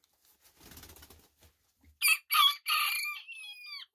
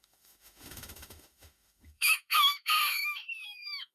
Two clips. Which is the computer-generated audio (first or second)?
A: second